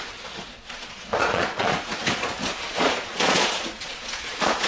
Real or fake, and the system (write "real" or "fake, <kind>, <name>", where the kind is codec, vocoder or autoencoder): fake, vocoder, Vocos